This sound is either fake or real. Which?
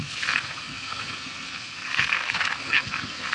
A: fake